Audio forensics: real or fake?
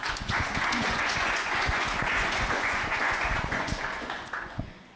fake